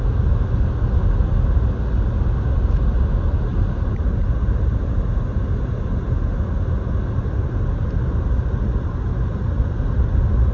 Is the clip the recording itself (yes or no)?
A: yes